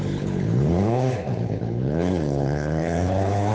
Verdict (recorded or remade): remade